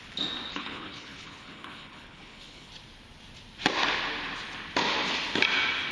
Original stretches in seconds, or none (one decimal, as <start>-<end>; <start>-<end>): 0.0-0.5; 2.7-5.9